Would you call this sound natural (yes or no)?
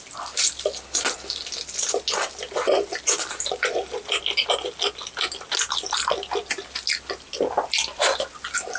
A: yes